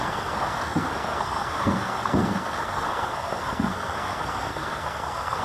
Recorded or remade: remade